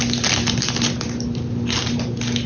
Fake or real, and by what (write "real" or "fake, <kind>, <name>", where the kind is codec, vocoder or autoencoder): real